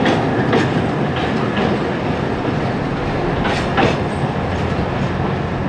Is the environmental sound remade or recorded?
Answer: recorded